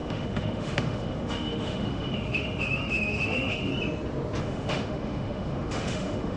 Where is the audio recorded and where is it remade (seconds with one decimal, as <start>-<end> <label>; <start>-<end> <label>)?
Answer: 0.0-3.7 remade; 3.7-4.4 recorded; 4.4-6.4 remade